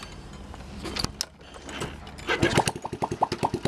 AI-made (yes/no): no